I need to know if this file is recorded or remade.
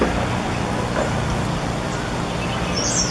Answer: recorded